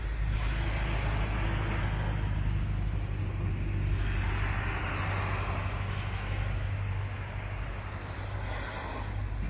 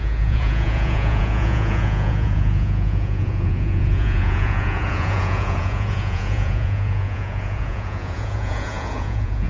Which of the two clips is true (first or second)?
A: first